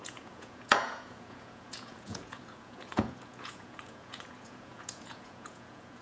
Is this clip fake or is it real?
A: fake